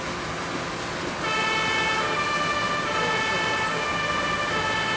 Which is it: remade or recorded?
recorded